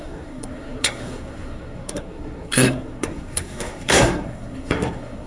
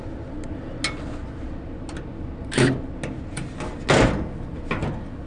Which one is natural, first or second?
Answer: second